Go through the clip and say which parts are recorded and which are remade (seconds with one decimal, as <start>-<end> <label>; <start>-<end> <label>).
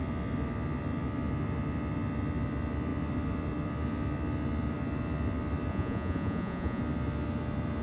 0.0-5.7 recorded; 5.7-6.8 remade; 6.8-7.8 recorded